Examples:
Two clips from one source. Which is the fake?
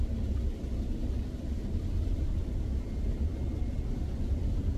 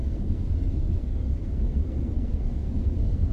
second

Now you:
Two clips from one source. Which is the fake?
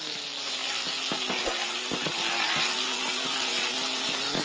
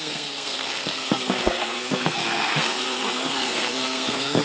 second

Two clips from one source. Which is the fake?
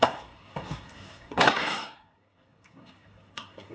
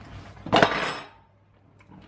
first